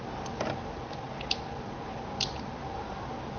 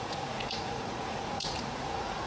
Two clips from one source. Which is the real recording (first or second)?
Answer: first